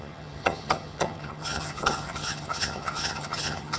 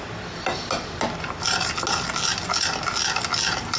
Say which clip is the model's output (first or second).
first